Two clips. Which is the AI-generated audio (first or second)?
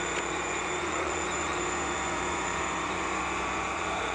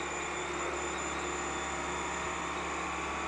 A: first